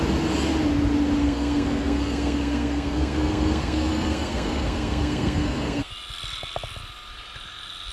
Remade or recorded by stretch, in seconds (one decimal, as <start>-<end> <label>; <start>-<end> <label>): 0.0-1.2 recorded; 1.2-5.9 remade; 5.9-7.9 recorded